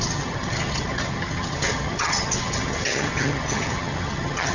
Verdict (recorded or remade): remade